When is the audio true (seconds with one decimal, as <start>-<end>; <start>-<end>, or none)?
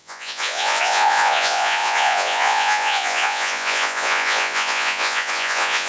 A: none